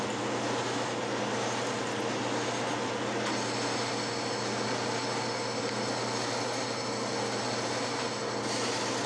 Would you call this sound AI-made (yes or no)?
no